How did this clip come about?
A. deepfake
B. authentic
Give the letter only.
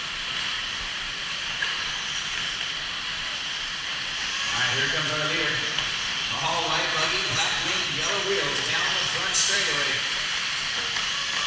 A